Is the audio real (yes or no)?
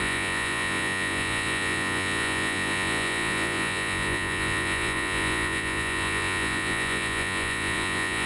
no